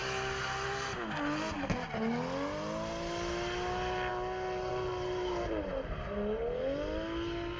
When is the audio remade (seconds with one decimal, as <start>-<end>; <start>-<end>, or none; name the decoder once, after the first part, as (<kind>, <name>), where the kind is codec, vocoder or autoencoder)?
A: none